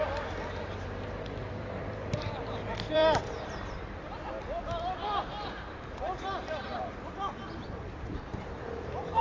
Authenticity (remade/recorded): remade